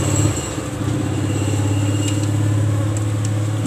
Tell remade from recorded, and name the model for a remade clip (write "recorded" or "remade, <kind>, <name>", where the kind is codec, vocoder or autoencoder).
recorded